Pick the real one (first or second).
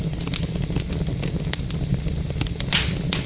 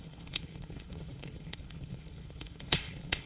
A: first